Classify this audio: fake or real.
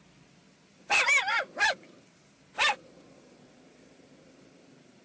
fake